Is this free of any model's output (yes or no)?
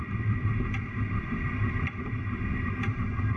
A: no